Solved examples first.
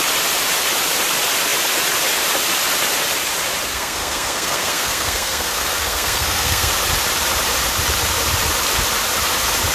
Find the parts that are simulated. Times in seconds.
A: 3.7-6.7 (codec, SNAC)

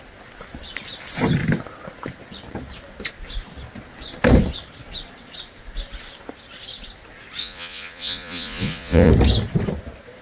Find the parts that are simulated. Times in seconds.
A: 7.4-9.1 (vocoder, Vocos)

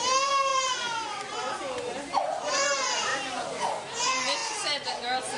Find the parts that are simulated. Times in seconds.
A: 0.5-1.5 (vocoder, BigVGAN v2); 3.1-3.8